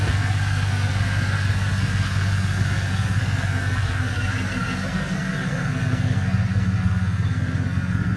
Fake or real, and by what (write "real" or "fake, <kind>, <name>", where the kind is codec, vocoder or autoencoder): fake, codec, SNAC